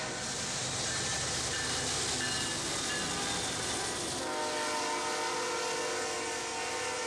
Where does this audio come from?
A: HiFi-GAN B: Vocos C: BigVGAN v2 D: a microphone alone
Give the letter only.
D